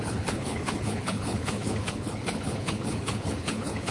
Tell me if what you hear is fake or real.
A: fake